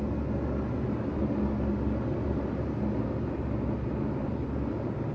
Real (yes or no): yes